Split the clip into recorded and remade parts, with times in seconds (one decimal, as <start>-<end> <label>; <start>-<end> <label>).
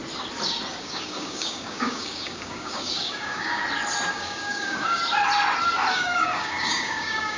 0.0-0.8 recorded; 0.8-3.6 remade; 3.6-4.1 recorded; 4.1-5.0 remade; 5.0-5.9 recorded; 5.9-7.4 remade